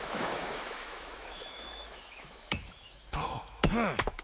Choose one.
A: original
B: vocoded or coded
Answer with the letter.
B